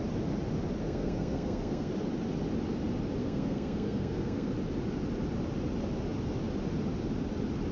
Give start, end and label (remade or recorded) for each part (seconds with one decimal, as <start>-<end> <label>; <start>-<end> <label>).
0.0-0.8 recorded; 0.8-1.9 remade; 1.9-3.2 recorded; 3.2-4.5 remade; 4.5-7.7 recorded